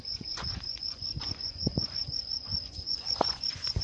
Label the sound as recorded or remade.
remade